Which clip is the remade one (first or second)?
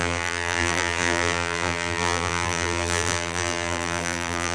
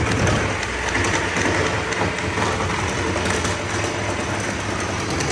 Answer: first